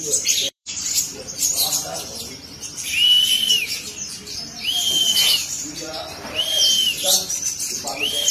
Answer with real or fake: fake